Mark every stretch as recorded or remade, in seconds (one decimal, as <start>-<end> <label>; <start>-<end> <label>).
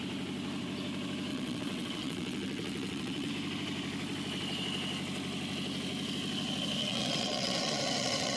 0.0-1.3 recorded; 1.3-3.3 remade; 3.3-6.8 recorded; 6.8-8.4 remade